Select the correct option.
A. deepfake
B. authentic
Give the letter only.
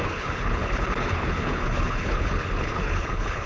A